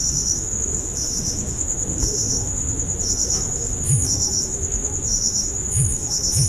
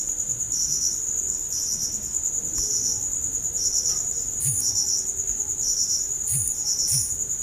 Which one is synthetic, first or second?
first